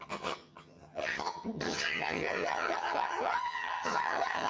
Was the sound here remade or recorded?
remade